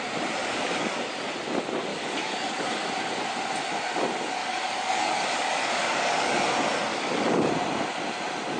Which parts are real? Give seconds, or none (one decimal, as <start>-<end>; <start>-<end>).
0.0-0.4; 1.0-1.9; 2.9-4.4; 6.4-6.9; 7.5-8.6